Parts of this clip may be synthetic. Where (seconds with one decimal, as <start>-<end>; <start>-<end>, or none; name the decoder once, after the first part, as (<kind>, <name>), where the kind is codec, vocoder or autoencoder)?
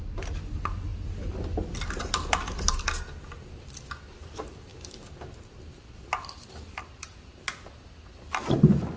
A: none